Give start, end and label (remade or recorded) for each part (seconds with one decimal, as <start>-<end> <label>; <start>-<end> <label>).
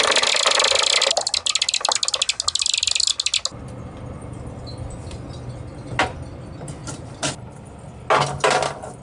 0.0-9.0 recorded